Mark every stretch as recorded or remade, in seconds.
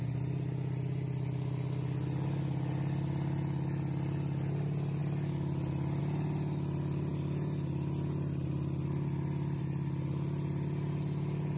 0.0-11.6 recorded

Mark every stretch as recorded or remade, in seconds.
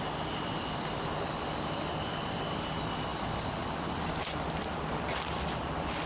0.0-6.1 recorded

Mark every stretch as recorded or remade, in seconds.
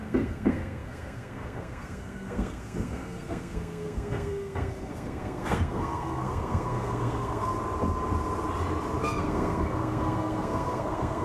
0.0-7.5 remade; 7.5-9.0 recorded; 9.0-11.2 remade